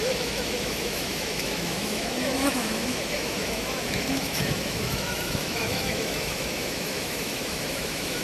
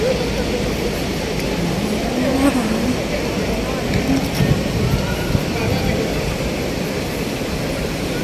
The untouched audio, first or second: second